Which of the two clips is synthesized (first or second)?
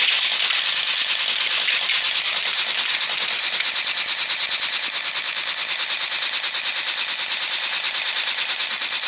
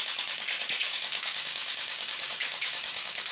second